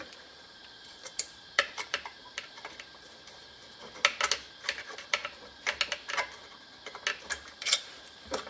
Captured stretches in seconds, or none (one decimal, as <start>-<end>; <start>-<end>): 3.6-4.6; 5.2-7.3